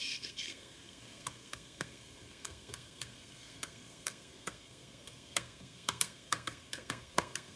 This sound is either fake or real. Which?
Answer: fake